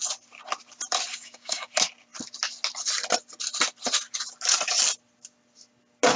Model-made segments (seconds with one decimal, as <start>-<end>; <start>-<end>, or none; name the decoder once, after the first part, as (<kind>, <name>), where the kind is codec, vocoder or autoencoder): 1.1-1.7 (codec, DAC)